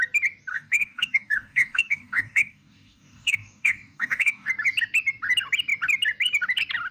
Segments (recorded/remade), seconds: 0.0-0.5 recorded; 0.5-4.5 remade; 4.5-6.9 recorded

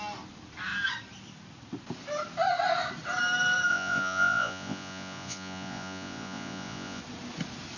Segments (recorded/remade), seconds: 0.0-3.7 recorded; 3.7-7.0 remade; 7.0-7.8 recorded

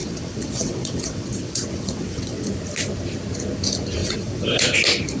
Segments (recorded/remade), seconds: 0.0-2.5 remade; 2.5-4.0 recorded; 4.0-4.6 remade; 4.6-5.2 recorded

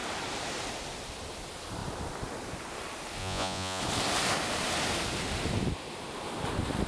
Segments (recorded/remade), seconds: 0.0-3.2 recorded; 3.2-3.8 remade; 3.8-6.9 recorded

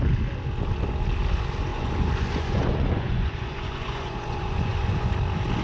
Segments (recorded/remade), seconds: 0.0-1.7 recorded; 1.7-5.1 remade; 5.1-5.6 recorded

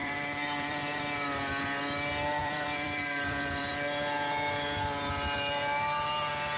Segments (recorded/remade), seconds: 0.0-1.0 remade; 1.0-2.4 recorded; 2.4-3.7 remade; 3.7-6.6 recorded